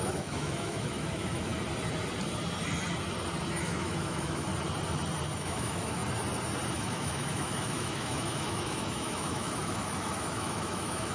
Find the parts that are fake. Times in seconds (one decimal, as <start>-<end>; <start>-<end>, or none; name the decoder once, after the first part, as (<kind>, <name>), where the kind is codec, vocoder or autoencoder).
0.0-1.5 (autoencoder, DAC-VAE); 3.6-4.5; 5.4-6.0; 6.7-11.1